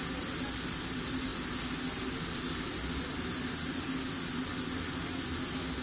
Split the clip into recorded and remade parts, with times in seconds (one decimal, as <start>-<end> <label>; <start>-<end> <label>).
0.0-5.8 recorded